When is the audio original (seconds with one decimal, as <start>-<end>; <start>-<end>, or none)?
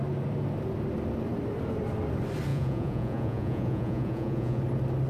0.0-2.5; 4.6-5.1